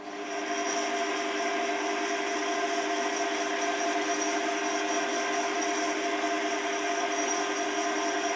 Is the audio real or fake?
real